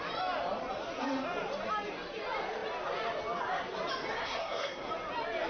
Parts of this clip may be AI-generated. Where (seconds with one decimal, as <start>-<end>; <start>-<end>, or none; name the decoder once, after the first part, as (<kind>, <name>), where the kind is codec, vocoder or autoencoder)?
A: 4.2-4.9 (codec, SNAC)